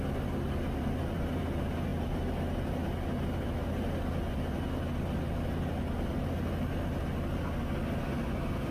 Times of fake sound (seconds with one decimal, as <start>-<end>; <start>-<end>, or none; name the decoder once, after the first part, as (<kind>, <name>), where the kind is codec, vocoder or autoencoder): none